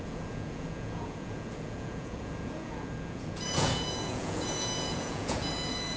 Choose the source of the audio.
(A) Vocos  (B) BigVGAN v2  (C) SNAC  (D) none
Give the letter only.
A